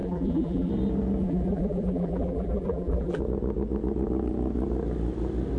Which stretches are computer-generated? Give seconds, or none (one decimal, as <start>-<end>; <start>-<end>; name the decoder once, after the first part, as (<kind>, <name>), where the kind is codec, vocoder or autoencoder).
0.0-0.7 (vocoder, BigVGAN v2); 1.2-3.2